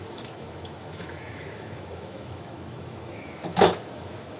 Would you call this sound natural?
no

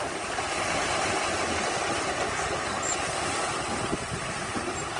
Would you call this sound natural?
yes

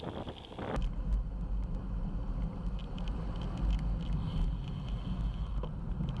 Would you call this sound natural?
yes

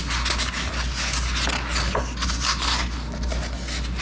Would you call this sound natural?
yes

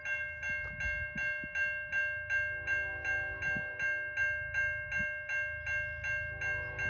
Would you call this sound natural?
yes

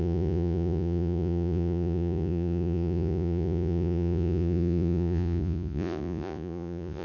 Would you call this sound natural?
no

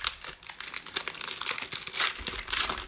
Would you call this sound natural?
yes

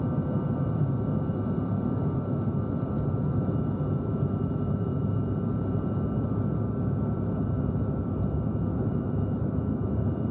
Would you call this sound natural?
no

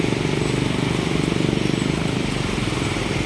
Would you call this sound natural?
yes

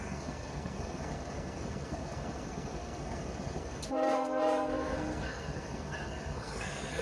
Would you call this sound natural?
no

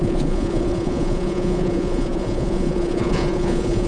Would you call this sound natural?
no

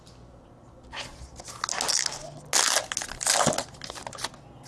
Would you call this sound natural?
yes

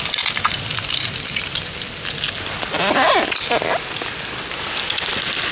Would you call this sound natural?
yes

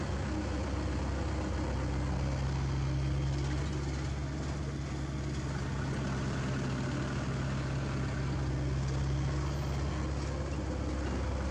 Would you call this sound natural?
yes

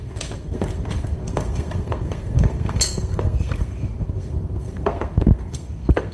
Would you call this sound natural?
no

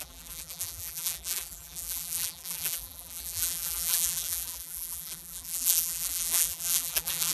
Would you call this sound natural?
no